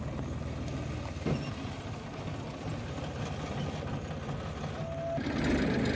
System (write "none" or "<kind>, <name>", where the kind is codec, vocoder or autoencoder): none